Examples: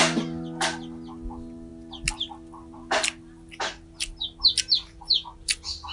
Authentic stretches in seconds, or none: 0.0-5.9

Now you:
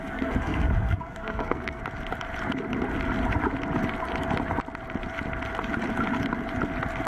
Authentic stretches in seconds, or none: 1.8-7.1

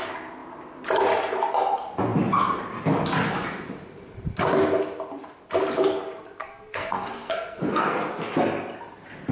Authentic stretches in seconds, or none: 0.0-6.4; 8.0-9.3

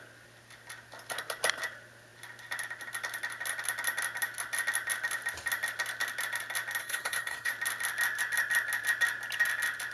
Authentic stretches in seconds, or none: 0.0-6.8; 7.5-9.9

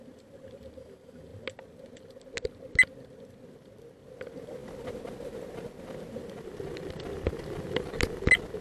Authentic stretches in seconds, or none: 0.0-8.6

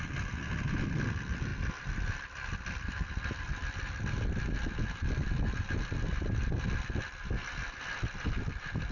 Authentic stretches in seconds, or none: 0.0-8.9

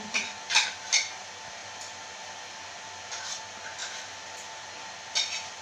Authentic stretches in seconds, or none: 0.0-5.6

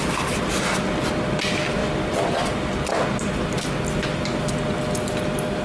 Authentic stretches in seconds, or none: 0.0-5.6